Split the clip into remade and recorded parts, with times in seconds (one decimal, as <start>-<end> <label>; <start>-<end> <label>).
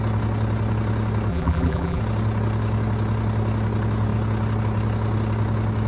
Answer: 0.0-1.3 recorded; 1.3-2.0 remade; 2.0-5.9 recorded